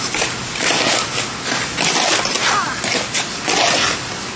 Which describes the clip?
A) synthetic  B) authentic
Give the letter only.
B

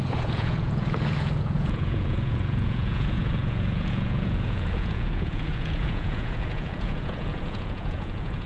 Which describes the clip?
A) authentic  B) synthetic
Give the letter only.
B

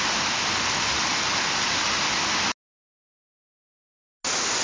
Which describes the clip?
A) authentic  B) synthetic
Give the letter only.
A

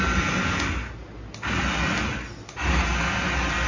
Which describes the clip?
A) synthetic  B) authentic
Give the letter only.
B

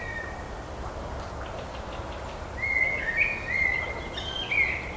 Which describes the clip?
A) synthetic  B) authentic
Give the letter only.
B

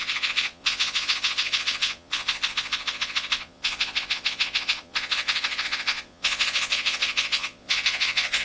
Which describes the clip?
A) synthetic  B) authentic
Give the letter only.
A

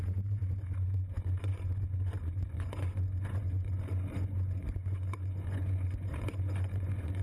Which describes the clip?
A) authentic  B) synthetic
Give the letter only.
B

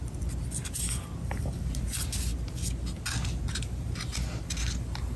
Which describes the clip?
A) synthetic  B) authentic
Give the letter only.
B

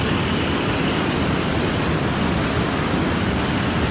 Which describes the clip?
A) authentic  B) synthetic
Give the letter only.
A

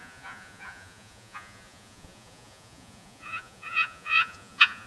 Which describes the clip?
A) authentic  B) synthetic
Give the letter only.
B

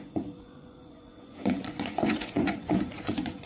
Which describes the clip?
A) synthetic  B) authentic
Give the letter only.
A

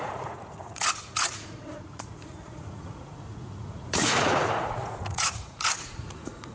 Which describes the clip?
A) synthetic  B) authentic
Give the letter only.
A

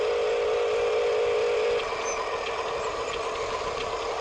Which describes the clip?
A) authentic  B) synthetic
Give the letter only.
A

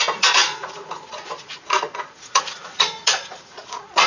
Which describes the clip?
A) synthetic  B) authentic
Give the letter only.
A